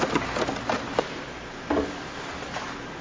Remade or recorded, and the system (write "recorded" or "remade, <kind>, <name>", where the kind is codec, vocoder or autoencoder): recorded